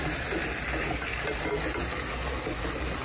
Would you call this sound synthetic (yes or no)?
no